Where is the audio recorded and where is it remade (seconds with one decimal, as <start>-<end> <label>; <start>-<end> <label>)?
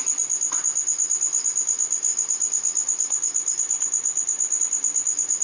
0.0-5.4 recorded